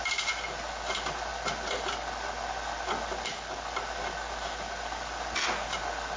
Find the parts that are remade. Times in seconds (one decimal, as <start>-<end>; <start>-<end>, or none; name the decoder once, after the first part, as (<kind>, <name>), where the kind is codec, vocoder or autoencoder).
none

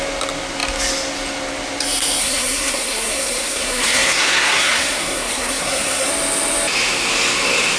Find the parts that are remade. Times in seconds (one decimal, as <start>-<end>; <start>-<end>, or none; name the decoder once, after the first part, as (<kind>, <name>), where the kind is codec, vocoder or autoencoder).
2.2-6.1 (codec, SNAC)